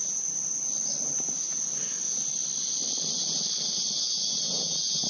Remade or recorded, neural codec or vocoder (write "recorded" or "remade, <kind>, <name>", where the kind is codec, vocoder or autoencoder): recorded